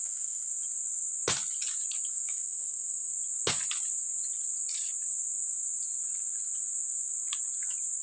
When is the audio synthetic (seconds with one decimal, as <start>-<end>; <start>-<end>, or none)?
0.0-0.5; 2.1-3.1